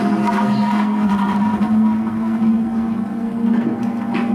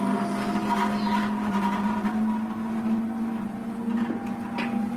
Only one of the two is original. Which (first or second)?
second